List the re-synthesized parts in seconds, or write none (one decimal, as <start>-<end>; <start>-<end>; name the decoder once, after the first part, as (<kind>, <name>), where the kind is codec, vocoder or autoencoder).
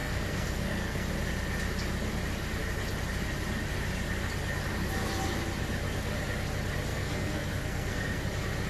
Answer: 0.0-1.1 (codec, SNAC); 6.9-8.2